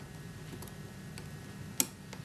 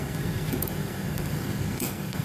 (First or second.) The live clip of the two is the first